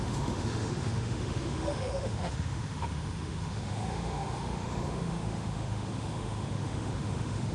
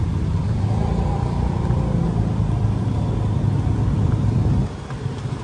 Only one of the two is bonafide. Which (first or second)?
second